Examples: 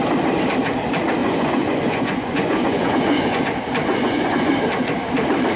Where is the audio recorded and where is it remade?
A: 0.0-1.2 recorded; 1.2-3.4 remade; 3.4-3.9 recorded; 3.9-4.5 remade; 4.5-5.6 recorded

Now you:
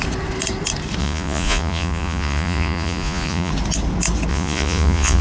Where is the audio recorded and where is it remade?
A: 0.0-1.0 recorded; 1.0-3.5 remade; 3.5-4.3 recorded; 4.3-5.2 remade

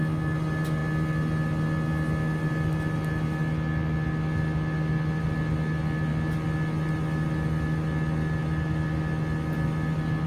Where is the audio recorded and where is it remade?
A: 0.0-10.3 recorded

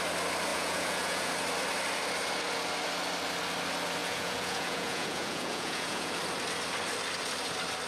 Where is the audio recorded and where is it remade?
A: 0.0-0.5 recorded; 0.5-1.3 remade; 1.3-4.0 recorded; 4.0-6.1 remade; 6.1-7.9 recorded

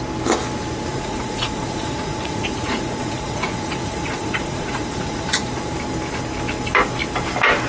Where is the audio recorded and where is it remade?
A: 0.0-0.9 recorded; 0.9-5.5 remade; 5.5-7.7 recorded